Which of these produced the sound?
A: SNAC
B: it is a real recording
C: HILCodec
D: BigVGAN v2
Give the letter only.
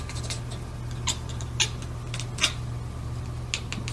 B